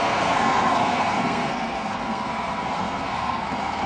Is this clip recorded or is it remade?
remade